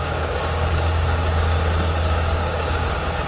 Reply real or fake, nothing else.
fake